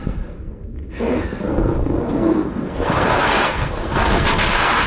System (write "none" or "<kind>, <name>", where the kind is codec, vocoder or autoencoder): codec, SNAC